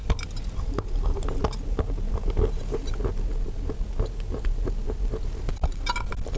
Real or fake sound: real